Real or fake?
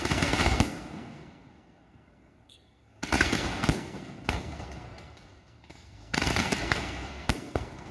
fake